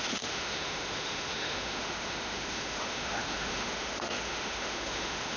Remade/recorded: remade